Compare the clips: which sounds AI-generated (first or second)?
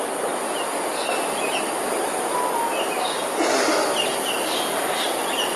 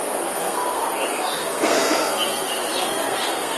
second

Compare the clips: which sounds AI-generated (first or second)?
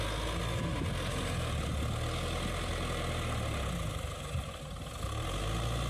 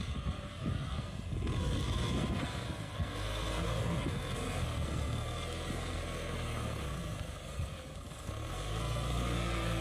second